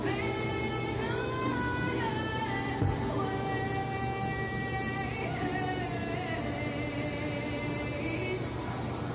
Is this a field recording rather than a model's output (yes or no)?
yes